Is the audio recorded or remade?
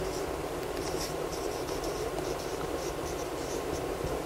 remade